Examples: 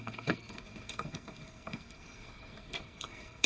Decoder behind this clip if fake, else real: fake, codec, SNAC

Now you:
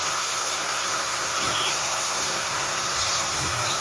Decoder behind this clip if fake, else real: fake, codec, SNAC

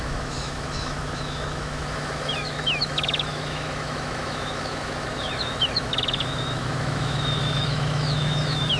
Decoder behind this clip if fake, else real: fake, autoencoder, DAC-VAE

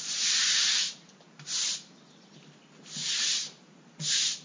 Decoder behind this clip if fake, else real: real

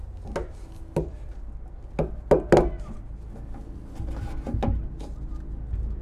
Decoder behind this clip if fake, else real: real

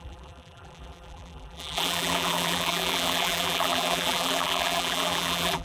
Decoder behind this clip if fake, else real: fake, vocoder, BigVGAN v2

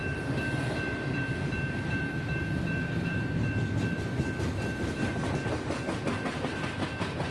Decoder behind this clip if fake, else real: fake, vocoder, BigVGAN v2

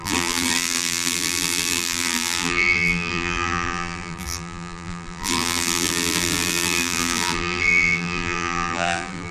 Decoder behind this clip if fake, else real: fake, vocoder, BigVGAN v2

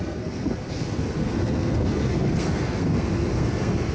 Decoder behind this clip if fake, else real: fake, codec, SNAC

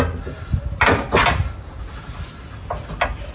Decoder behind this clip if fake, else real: real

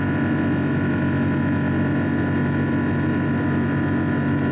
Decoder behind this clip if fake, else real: real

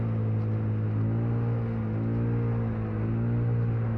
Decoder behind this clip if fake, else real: real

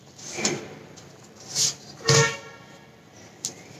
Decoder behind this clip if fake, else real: real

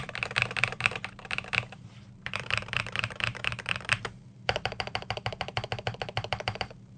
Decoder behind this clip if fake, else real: fake, vocoder, BigVGAN v2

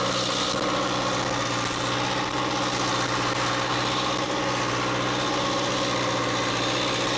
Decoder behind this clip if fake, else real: real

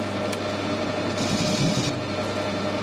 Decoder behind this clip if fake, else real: real